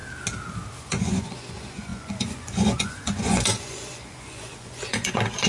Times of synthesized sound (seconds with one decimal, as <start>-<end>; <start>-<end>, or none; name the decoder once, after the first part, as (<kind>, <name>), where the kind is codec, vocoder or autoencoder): 0.8-5.5 (vocoder, Vocos)